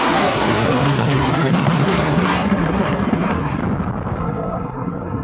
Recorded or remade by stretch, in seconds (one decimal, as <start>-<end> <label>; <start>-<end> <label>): 0.0-3.6 remade; 3.6-4.2 recorded; 4.2-5.2 remade